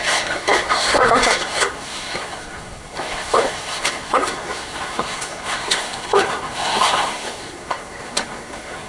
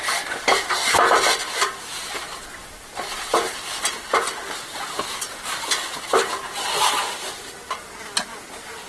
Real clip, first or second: second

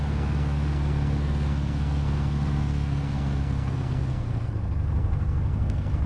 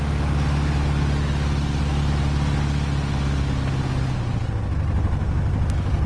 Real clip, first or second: second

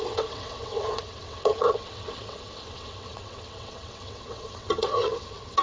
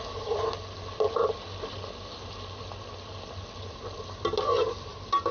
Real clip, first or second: second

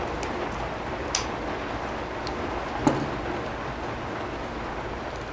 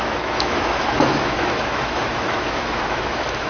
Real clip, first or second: first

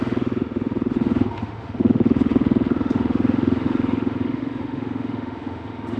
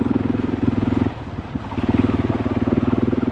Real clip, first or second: second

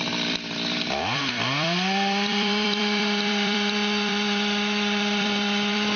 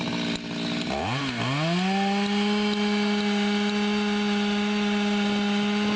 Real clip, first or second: second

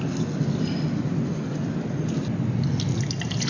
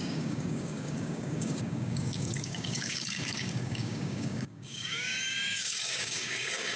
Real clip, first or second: first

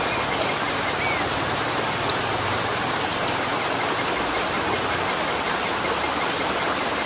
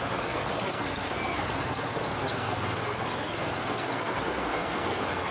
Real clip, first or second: first